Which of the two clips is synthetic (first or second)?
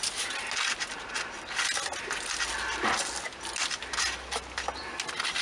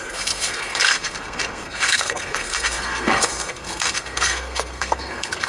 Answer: second